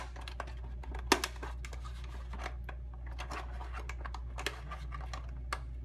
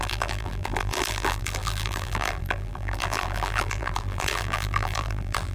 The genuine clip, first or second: first